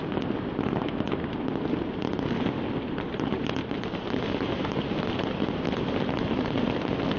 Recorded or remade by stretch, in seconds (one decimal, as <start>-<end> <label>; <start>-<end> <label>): 0.0-3.6 remade; 3.6-4.3 recorded; 4.3-7.2 remade